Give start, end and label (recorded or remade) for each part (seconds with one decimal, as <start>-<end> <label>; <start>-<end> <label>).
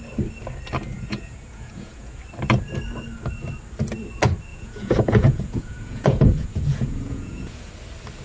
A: 0.0-0.9 recorded; 0.9-2.2 remade; 2.2-4.5 recorded; 4.5-7.7 remade; 7.7-8.2 recorded